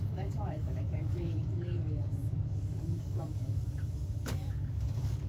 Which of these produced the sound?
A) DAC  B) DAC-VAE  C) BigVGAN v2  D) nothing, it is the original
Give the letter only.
A